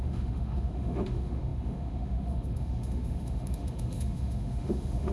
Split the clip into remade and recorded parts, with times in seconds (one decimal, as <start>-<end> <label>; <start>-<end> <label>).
0.0-5.1 remade